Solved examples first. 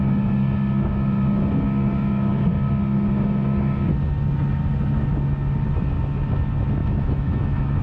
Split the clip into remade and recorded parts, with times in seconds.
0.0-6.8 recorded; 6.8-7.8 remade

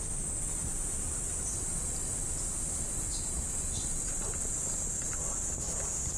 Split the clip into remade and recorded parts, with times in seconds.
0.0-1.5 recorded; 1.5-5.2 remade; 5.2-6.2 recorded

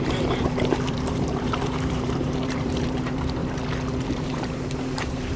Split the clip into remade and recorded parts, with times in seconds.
0.0-3.4 remade; 3.4-4.0 recorded; 4.0-5.4 remade

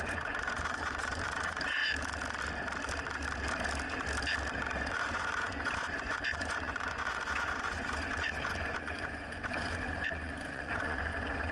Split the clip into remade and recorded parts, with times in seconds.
0.0-1.8 remade; 1.8-4.9 recorded; 4.9-11.5 remade

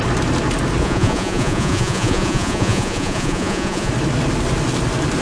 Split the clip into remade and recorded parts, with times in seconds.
0.0-0.8 recorded; 0.8-3.9 remade; 3.9-5.2 recorded

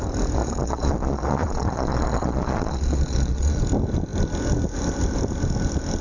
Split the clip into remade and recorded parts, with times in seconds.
0.0-0.4 recorded; 0.4-3.6 remade; 3.6-6.0 recorded